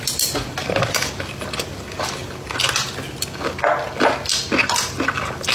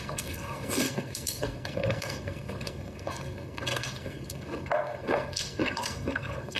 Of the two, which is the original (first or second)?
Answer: first